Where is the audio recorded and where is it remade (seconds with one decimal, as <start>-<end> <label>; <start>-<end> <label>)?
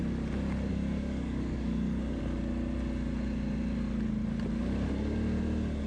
0.0-0.7 recorded; 0.7-2.2 remade; 2.2-5.9 recorded